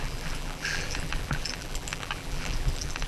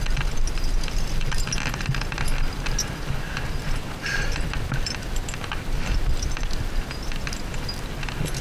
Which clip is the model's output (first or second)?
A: first